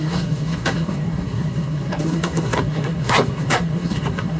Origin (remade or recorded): remade